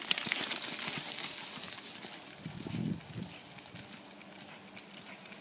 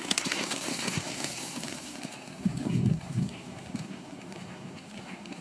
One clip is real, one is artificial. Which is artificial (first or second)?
second